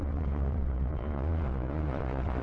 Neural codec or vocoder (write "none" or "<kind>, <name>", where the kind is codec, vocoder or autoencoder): vocoder, Vocos